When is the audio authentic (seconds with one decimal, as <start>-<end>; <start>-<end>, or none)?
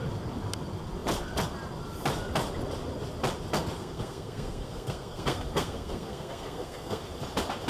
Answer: 0.0-3.8; 7.0-7.7